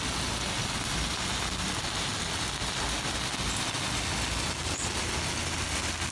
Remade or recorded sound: recorded